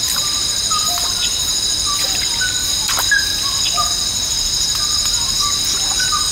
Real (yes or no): no